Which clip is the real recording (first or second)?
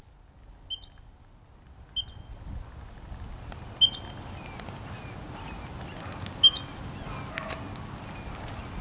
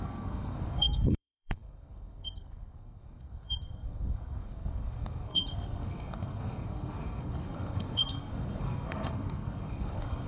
first